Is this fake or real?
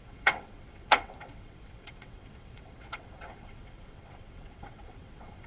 fake